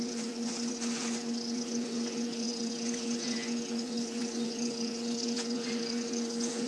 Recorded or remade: remade